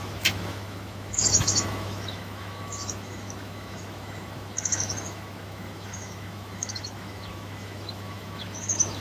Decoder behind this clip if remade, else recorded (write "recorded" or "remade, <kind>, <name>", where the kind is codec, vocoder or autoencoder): remade, autoencoder, DAC-VAE